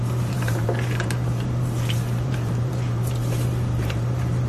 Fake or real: fake